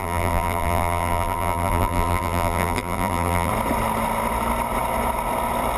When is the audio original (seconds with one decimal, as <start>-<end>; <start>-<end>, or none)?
3.5-5.8